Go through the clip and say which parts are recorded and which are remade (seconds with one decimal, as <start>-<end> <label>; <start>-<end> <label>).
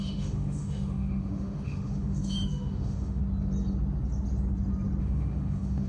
0.0-3.2 remade; 3.2-5.0 recorded; 5.0-5.9 remade